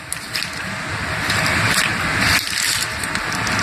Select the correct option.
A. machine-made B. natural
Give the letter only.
B